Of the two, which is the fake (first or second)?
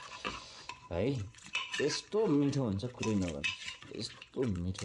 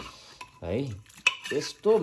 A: first